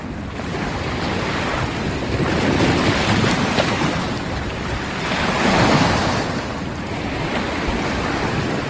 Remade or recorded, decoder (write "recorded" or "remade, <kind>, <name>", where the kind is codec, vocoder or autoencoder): recorded